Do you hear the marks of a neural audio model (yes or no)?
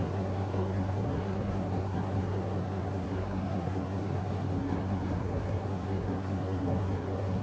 yes